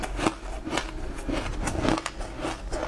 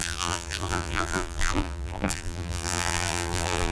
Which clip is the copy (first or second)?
second